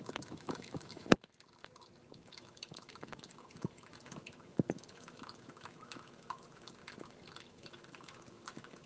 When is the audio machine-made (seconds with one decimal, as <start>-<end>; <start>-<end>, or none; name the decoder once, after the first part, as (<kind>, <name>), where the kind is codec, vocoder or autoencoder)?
0.0-1.0 (autoencoder, DAC-VAE); 2.1-6.8; 7.3-8.9